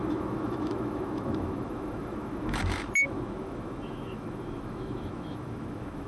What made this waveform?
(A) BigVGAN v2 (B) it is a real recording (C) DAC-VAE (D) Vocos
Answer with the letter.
C